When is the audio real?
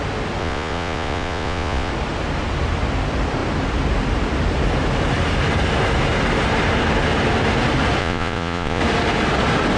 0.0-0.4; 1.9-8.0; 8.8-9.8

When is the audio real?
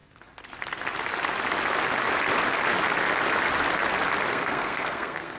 0.0-4.3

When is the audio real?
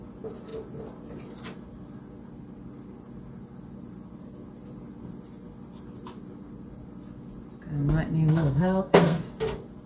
0.0-8.3; 9.2-9.9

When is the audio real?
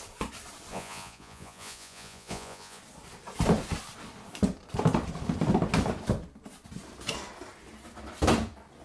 0.0-0.7; 2.8-8.8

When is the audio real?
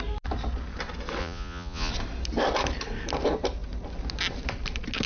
0.0-1.2; 1.9-5.1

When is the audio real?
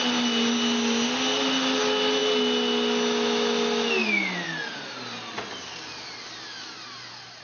0.0-7.4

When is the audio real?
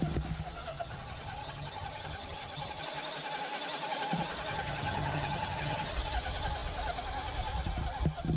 0.0-0.7; 2.8-4.5; 5.9-8.4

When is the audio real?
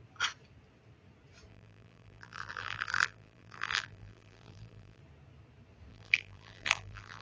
0.0-1.5; 5.0-5.9